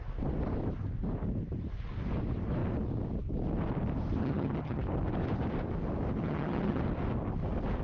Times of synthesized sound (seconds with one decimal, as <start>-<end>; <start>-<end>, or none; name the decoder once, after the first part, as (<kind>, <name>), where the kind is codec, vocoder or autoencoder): 4.2-4.8 (vocoder, HiFi-GAN); 6.2-6.8